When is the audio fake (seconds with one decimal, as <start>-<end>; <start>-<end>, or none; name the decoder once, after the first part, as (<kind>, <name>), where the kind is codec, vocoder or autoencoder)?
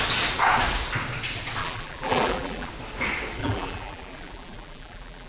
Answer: 1.6-2.7 (vocoder, BigVGAN v2); 3.4-5.3